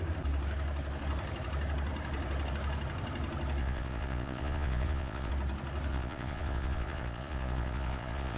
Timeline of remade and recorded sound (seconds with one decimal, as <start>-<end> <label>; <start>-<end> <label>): 0.0-3.6 recorded; 3.6-5.3 remade; 5.3-5.9 recorded; 5.9-8.4 remade